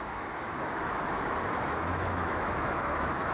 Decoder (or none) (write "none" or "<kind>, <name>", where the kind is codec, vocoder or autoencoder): autoencoder, DAC-VAE